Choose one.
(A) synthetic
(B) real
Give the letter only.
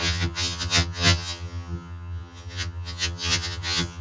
A